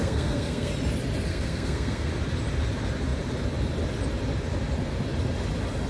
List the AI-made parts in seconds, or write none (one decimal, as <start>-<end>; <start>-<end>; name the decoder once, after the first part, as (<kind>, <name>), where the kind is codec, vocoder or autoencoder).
0.0-0.7 (codec, SNAC); 1.3-2.1